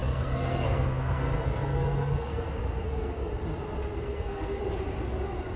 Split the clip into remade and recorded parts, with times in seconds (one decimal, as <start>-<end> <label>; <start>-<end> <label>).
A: 0.0-3.3 remade; 3.3-3.9 recorded; 3.9-4.6 remade; 4.6-5.6 recorded